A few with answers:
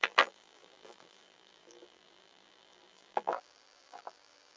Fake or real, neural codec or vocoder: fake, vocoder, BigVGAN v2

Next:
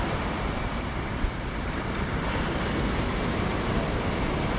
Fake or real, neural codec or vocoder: fake, vocoder, BigVGAN v2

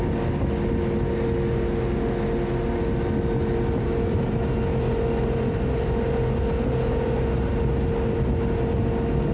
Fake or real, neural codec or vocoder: real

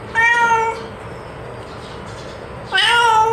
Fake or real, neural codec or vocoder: real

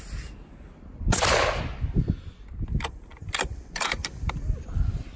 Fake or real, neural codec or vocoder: real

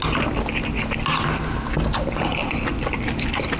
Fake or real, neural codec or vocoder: real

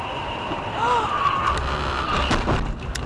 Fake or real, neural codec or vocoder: real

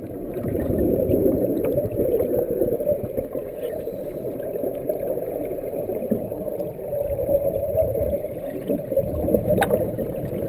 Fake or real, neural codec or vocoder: fake, vocoder, BigVGAN v2